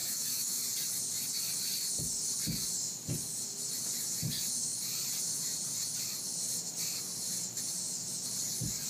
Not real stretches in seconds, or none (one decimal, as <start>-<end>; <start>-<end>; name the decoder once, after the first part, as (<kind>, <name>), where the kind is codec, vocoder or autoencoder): 0.0-0.6 (autoencoder, DAC-VAE)